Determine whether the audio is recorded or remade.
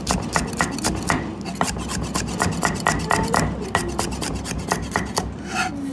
recorded